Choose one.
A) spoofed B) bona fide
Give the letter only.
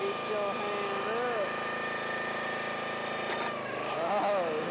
B